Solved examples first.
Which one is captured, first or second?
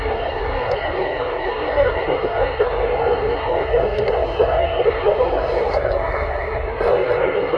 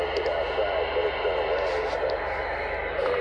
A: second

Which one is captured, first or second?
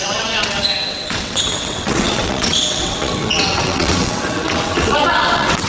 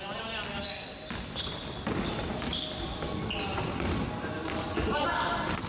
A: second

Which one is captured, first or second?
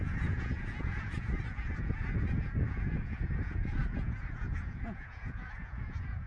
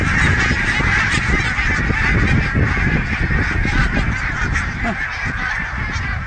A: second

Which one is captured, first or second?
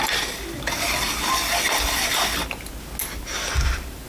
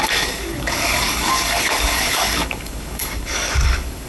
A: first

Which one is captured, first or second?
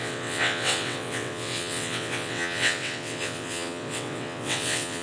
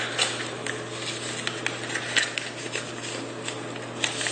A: second